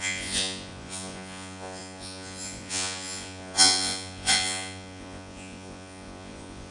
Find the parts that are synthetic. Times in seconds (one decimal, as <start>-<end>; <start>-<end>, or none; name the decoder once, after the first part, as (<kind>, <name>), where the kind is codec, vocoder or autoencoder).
0.0-6.7 (vocoder, Vocos)